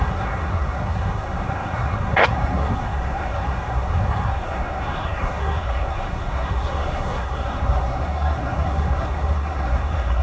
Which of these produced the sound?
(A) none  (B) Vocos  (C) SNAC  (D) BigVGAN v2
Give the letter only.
C